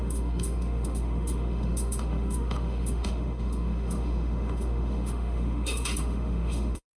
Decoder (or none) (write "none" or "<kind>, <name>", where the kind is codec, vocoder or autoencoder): autoencoder, DAC-VAE